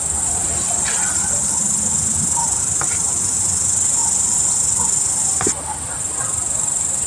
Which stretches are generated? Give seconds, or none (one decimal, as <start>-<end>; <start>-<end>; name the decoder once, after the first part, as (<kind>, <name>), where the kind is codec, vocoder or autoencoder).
none